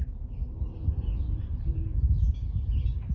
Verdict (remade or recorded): recorded